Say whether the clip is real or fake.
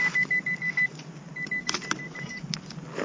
real